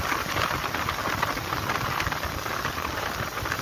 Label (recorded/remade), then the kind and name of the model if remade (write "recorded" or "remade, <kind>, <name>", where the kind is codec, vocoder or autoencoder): recorded